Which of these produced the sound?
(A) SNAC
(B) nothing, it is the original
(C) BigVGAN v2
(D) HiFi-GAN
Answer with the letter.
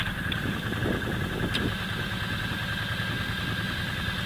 B